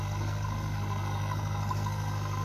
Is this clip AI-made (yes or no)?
yes